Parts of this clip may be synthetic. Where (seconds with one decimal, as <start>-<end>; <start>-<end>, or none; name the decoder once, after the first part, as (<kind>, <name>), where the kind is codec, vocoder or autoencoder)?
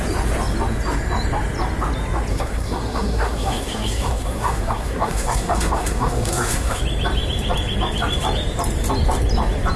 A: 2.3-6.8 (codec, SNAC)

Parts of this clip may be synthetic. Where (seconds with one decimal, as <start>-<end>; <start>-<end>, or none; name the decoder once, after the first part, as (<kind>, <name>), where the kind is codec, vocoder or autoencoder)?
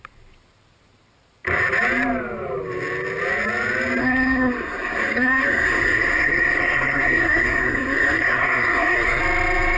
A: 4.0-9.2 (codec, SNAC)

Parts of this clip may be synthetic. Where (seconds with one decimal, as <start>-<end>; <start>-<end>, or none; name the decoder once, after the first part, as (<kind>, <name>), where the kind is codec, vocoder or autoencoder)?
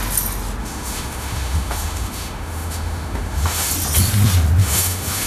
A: 0.6-3.7 (autoencoder, DAC-VAE); 4.6-5.3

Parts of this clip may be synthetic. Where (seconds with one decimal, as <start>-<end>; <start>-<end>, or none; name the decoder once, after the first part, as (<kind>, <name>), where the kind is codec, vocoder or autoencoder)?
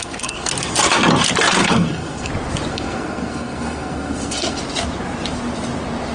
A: 0.0-0.5 (codec, SNAC); 1.6-2.3; 2.7-4.6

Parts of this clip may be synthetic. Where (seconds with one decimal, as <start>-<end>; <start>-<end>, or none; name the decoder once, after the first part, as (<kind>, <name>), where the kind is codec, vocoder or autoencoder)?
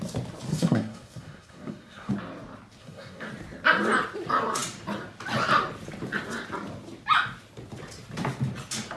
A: 0.5-2.1 (codec, SNAC); 2.8-3.3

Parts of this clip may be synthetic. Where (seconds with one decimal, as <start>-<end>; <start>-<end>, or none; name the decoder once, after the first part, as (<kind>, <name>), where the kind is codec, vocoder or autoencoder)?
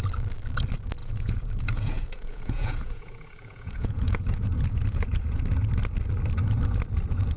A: 1.0-5.4 (vocoder, Vocos)